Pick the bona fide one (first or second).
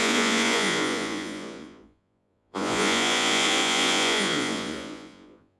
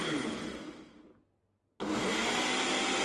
second